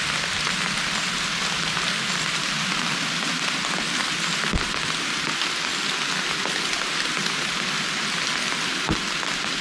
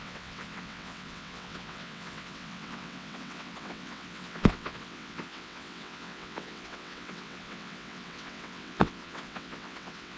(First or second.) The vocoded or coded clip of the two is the second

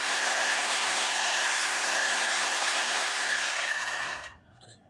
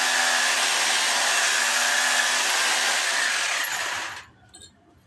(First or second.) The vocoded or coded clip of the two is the first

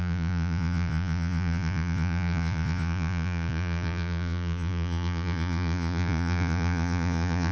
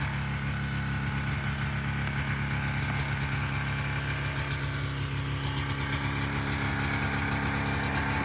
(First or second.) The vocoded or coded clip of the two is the first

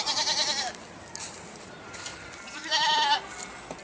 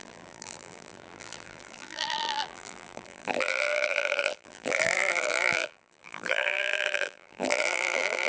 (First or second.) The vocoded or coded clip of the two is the second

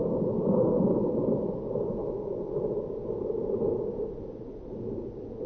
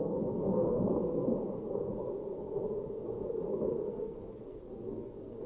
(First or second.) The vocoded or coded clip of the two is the second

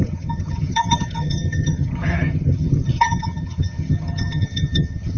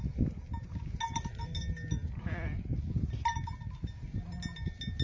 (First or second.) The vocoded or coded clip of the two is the first